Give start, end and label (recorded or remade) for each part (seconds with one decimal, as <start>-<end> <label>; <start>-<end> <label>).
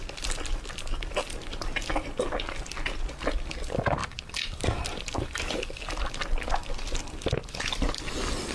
0.0-4.0 recorded; 4.0-5.4 remade; 5.4-8.5 recorded